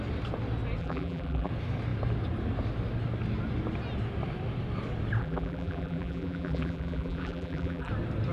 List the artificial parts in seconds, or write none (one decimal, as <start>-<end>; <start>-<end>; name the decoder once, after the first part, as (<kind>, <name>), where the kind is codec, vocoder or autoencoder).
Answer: 0.8-1.5 (vocoder, BigVGAN v2); 5.2-7.9